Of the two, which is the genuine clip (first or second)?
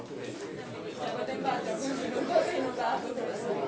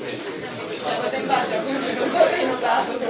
first